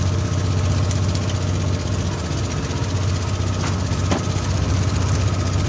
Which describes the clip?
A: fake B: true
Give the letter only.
B